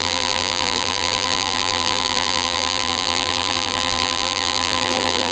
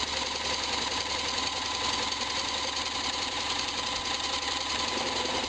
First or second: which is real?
second